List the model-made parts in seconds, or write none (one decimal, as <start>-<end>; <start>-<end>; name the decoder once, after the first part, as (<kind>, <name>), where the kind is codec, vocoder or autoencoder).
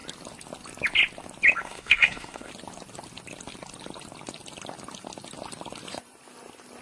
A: 1.6-2.5 (codec, SNAC)